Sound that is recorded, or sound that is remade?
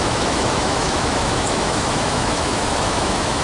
remade